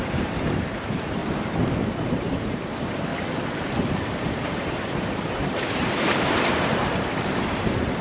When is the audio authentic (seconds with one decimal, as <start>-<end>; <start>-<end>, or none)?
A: 1.2-2.1; 3.1-3.9